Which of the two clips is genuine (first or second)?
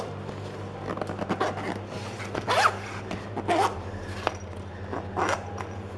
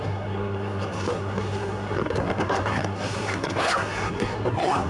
first